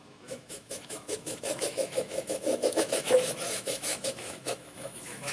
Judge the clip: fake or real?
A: fake